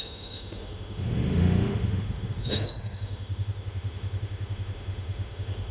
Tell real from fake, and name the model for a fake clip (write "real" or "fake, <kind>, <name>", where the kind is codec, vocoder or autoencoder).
fake, autoencoder, DAC-VAE